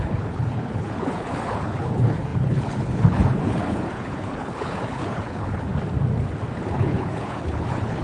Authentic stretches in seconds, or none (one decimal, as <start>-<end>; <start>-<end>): 5.7-6.7